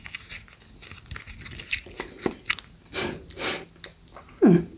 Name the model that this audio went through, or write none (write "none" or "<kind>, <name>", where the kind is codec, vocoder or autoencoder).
none